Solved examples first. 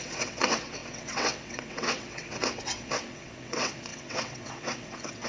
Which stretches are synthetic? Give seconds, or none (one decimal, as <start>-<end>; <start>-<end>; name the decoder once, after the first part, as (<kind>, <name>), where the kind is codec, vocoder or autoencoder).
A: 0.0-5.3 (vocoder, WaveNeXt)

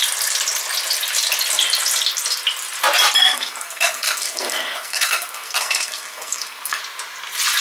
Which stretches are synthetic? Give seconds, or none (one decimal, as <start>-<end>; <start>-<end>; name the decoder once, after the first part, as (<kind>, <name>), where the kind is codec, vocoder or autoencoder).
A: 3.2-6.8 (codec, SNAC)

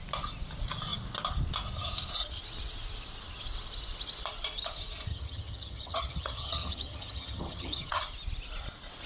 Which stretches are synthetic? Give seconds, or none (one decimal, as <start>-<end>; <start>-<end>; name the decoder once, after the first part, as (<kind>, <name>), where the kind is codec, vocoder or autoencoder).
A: 5.1-8.0 (vocoder, HiFi-GAN)

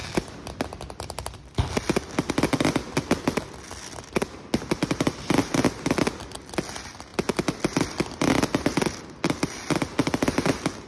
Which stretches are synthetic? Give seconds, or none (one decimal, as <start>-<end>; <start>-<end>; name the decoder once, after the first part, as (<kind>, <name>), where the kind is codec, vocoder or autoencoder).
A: none

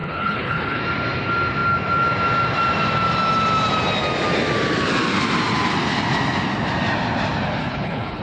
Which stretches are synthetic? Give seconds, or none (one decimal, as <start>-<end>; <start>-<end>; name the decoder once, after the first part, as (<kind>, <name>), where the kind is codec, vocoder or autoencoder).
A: 0.0-0.8 (codec, HILCodec); 7.6-8.2

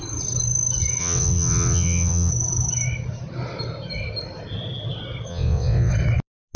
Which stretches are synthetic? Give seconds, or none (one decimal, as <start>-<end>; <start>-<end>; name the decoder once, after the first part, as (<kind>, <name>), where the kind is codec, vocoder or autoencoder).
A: 1.0-2.3 (vocoder, WaveNeXt); 5.3-5.9

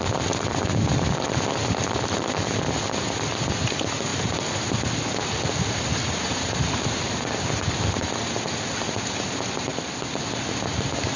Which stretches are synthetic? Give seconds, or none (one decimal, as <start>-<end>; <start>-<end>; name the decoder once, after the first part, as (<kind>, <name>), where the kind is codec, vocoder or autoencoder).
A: 4.1-4.7 (vocoder, BigVGAN v2)

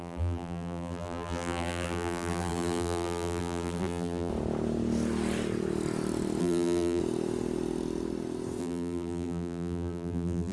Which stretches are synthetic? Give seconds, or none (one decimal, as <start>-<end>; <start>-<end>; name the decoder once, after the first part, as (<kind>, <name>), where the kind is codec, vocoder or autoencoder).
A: 0.0-4.3 (vocoder, BigVGAN v2); 6.4-7.0; 8.6-10.5